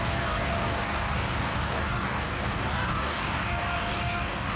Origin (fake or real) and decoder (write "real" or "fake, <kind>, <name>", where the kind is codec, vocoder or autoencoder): fake, codec, DAC